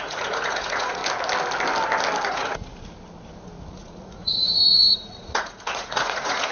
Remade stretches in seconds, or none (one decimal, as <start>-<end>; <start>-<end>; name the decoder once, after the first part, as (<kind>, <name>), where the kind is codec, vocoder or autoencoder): 0.0-1.0 (vocoder, Vocos); 2.3-2.7; 3.7-6.5